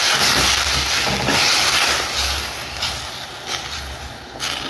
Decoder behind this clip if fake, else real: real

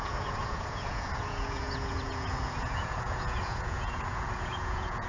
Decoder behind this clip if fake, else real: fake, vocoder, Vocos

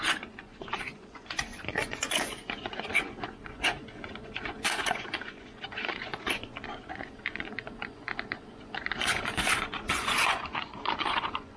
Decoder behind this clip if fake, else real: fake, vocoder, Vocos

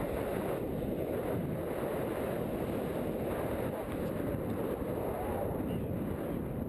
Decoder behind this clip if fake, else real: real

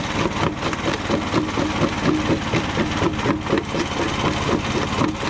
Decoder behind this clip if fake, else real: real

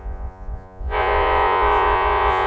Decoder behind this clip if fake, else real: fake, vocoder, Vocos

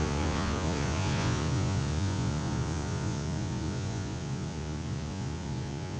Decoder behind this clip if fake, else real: fake, vocoder, Vocos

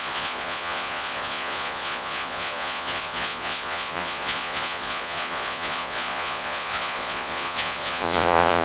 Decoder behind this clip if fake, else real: fake, vocoder, Vocos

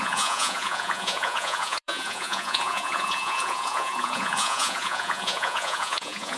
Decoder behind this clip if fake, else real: fake, vocoder, Vocos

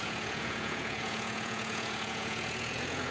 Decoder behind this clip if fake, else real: fake, vocoder, Vocos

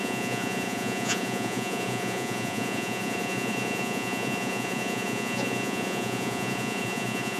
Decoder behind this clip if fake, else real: fake, vocoder, Vocos